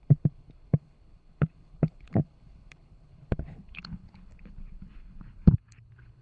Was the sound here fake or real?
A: fake